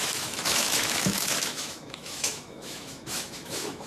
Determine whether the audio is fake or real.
fake